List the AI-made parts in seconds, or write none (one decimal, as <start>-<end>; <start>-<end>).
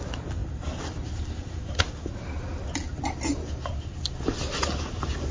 none